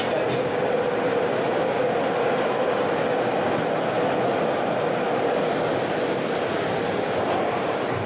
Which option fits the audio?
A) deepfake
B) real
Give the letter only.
B